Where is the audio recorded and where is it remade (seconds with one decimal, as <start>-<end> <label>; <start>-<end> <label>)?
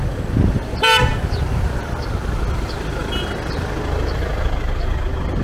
0.0-5.4 recorded